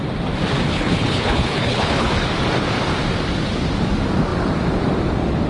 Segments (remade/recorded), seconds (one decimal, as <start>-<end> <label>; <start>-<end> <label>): 0.0-0.7 recorded; 0.7-2.1 remade; 2.1-5.5 recorded